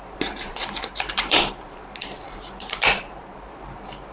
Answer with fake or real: fake